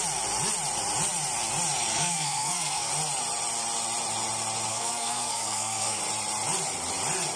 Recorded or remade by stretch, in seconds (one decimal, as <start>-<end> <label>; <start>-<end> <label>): 0.0-1.9 recorded; 1.9-2.9 remade; 2.9-4.7 recorded; 4.7-6.0 remade; 6.0-7.4 recorded